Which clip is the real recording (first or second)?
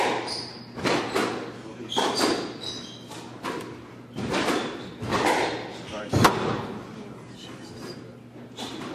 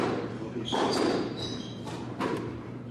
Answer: first